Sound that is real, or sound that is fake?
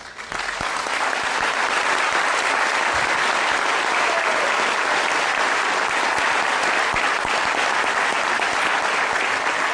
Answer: real